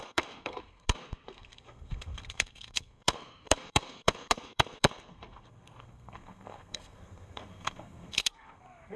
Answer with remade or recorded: remade